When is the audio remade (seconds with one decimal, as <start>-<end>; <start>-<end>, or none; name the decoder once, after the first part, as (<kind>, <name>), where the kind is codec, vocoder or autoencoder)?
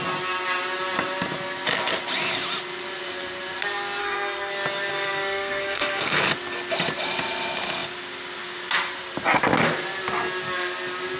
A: 4.0-4.5 (codec, SNAC); 4.9-6.2